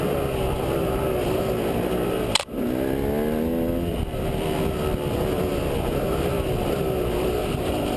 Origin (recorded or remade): recorded